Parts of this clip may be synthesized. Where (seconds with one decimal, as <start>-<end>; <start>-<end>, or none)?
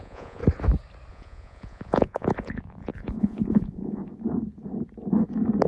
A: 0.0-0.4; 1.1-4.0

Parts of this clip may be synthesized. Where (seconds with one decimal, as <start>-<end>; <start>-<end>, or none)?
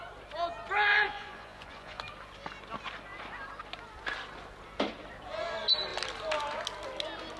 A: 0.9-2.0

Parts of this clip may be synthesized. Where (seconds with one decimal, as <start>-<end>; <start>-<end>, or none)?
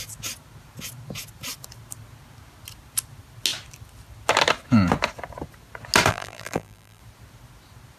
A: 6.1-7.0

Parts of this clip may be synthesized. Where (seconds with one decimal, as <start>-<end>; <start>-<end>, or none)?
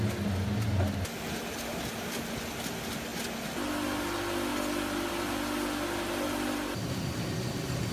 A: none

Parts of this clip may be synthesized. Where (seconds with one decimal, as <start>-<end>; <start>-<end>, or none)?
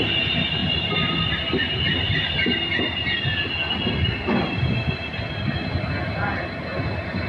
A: none